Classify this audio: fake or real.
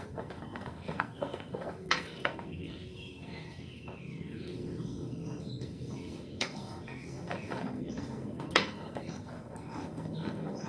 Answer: fake